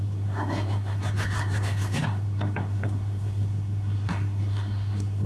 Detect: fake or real fake